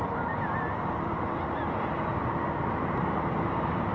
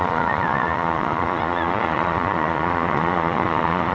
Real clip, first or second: first